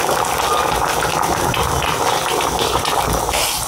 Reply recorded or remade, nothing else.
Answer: recorded